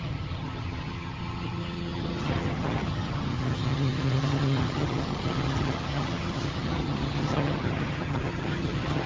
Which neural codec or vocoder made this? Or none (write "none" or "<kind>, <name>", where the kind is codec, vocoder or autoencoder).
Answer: vocoder, HiFi-GAN